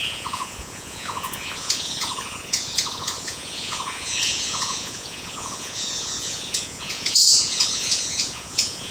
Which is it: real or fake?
fake